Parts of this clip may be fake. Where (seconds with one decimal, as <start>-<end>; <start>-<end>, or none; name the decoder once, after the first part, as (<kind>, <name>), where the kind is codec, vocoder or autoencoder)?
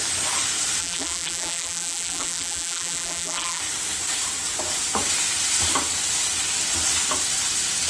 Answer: 0.8-3.6 (vocoder, BigVGAN v2)